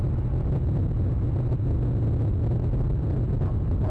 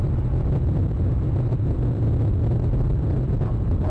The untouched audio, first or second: first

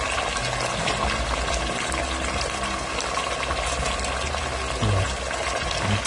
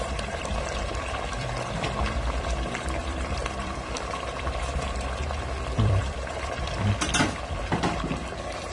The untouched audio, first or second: first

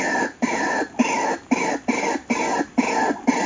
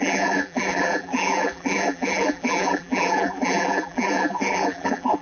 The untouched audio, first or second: first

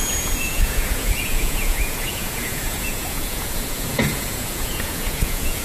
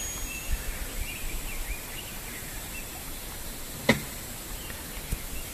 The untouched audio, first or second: second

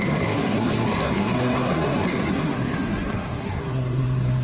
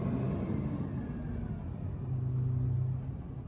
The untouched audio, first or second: second